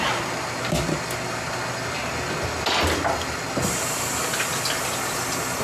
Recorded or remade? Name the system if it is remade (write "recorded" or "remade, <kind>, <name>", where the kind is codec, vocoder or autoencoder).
recorded